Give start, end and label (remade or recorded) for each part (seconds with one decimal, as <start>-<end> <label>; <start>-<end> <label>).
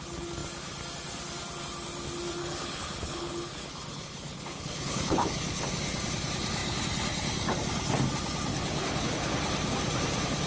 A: 0.0-2.4 recorded; 2.4-5.7 remade; 5.7-8.5 recorded; 8.5-9.3 remade; 9.3-10.5 recorded